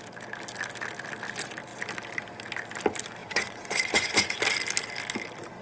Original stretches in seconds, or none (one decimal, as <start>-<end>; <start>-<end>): 0.0-3.2; 4.4-5.6